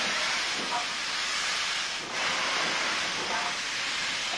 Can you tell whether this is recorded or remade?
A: recorded